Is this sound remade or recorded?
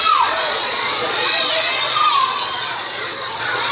remade